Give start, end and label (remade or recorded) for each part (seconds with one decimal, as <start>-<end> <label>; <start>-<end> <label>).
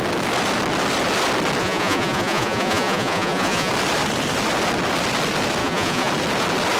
0.0-1.6 recorded; 1.6-3.7 remade; 3.7-5.6 recorded; 5.6-6.1 remade; 6.1-6.8 recorded